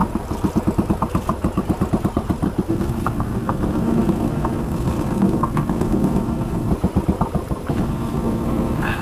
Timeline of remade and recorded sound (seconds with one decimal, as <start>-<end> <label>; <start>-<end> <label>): 0.0-2.7 recorded; 2.7-6.7 remade; 6.7-7.7 recorded; 7.7-9.0 remade